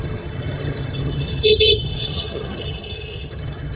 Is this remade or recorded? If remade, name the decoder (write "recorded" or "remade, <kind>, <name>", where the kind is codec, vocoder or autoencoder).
remade, vocoder, HiFi-GAN